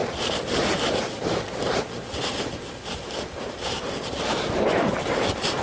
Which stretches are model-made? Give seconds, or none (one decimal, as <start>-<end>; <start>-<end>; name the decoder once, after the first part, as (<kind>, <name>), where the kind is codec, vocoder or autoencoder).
none

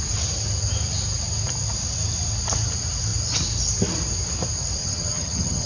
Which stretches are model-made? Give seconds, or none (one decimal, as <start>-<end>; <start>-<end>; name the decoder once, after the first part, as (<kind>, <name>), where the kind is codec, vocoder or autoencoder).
4.8-5.7 (vocoder, HiFi-GAN)

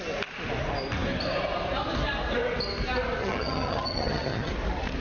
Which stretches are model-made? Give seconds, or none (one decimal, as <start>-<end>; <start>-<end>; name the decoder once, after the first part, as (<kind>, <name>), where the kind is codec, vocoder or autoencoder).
3.2-4.5 (vocoder, HiFi-GAN)

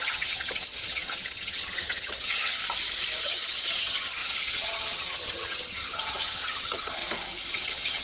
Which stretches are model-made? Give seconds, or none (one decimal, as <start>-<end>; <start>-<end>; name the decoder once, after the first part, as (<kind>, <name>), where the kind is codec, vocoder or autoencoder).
0.0-2.6 (vocoder, HiFi-GAN); 3.2-7.0; 7.5-8.0

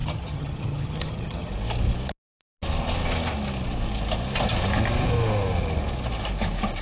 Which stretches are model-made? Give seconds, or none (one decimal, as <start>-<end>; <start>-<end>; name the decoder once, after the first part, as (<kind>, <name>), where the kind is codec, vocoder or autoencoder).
0.0-1.5 (vocoder, HiFi-GAN)

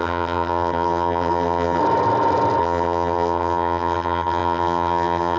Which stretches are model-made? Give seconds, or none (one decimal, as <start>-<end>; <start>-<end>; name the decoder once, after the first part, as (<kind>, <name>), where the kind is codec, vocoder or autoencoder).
0.0-1.8 (vocoder, HiFi-GAN); 2.6-5.4

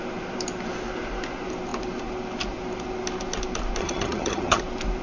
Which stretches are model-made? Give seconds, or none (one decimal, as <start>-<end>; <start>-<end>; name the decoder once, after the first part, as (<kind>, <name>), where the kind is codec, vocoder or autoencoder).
3.8-4.6 (vocoder, HiFi-GAN)

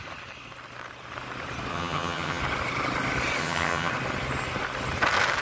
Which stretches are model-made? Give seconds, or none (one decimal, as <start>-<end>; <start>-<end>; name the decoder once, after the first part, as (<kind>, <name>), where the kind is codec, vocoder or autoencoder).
1.7-2.4 (vocoder, HiFi-GAN); 3.4-3.9